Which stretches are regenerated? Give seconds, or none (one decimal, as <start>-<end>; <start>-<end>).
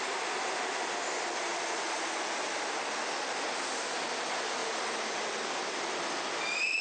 none